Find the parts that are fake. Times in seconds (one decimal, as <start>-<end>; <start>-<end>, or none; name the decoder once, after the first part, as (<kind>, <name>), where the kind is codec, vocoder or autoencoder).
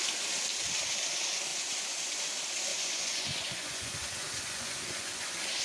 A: 1.5-2.3 (vocoder, Vocos); 2.7-5.6